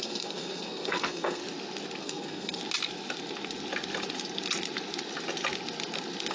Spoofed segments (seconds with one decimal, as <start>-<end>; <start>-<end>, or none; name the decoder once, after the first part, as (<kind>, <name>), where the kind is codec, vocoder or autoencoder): 0.0-1.4 (codec, SNAC); 2.0-2.6